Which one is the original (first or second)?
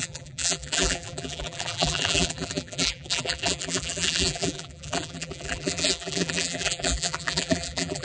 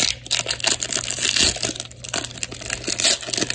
second